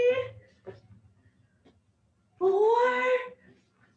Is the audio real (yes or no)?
yes